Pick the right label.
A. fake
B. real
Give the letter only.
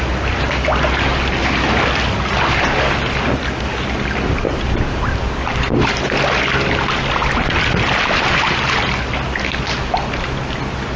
B